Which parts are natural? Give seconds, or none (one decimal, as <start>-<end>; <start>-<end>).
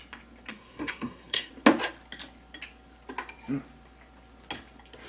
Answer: 0.0-0.5; 1.5-5.1